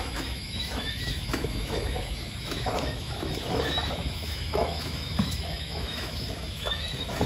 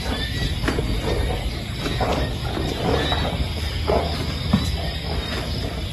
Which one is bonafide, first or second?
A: second